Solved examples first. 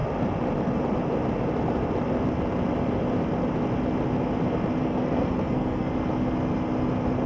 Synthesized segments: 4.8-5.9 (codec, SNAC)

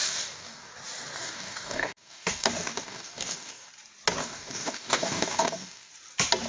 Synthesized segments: 0.0-0.7 (codec, DAC); 1.2-3.7; 4.2-5.9

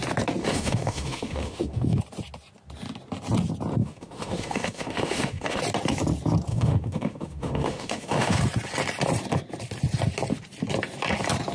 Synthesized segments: 0.4-2.0 (autoencoder, DAC-VAE); 3.8-5.6; 6.5-8.4

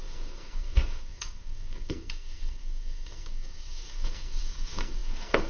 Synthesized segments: 0.0-5.5 (codec, SNAC)

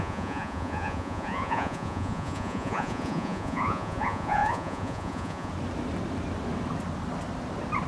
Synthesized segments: 0.0-5.5 (vocoder, Vocos)